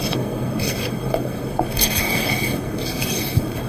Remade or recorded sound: remade